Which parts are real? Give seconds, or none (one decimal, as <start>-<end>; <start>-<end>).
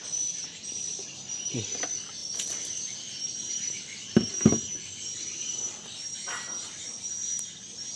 0.0-2.2; 3.7-8.0